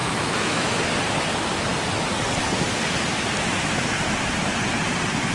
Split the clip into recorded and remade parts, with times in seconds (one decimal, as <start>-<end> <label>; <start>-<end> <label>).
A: 0.0-0.9 remade; 0.9-5.3 recorded